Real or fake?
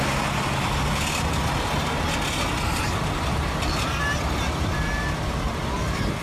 real